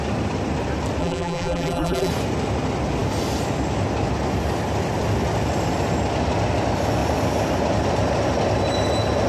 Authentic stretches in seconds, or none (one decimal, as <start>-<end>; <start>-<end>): 0.0-1.0; 2.1-9.3